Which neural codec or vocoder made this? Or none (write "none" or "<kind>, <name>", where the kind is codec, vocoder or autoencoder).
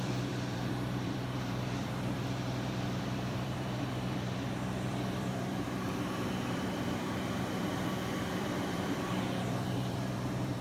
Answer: vocoder, BigVGAN v2